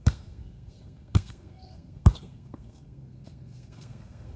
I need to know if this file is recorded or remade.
remade